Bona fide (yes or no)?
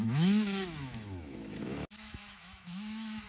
no